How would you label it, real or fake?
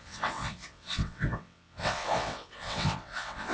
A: fake